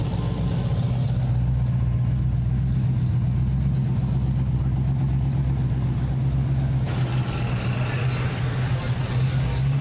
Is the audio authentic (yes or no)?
yes